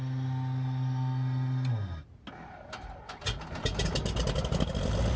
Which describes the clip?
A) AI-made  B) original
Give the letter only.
B